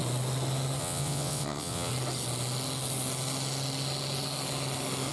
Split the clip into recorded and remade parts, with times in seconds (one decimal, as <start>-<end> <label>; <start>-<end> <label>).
0.0-0.8 recorded; 0.8-1.9 remade; 1.9-5.1 recorded